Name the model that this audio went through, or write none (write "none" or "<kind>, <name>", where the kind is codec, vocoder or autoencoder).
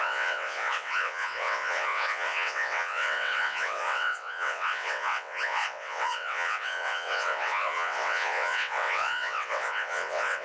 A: vocoder, WaveNeXt